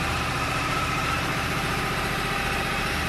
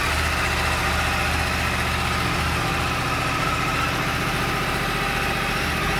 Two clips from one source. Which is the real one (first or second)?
second